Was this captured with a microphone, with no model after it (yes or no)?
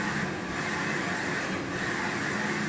yes